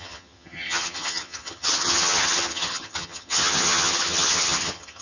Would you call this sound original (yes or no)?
no